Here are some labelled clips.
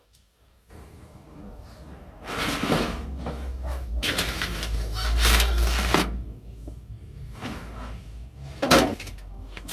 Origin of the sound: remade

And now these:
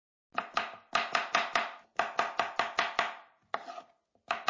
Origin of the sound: recorded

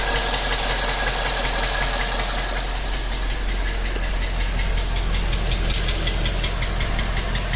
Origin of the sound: recorded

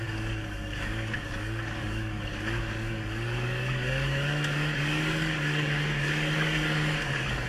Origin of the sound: remade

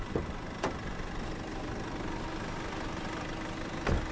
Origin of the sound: recorded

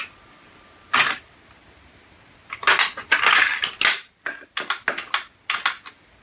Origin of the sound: recorded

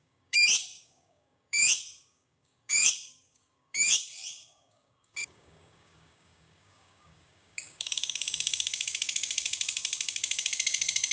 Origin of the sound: remade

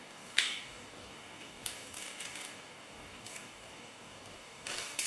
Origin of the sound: remade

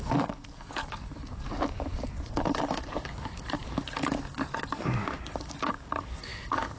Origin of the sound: remade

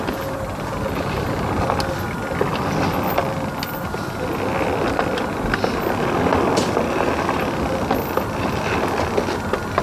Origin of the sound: recorded